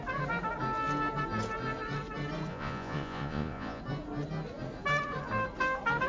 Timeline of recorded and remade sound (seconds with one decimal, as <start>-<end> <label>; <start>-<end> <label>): 0.0-2.5 recorded; 2.5-3.8 remade; 3.8-6.1 recorded